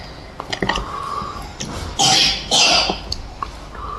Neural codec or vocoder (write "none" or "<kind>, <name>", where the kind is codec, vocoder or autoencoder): none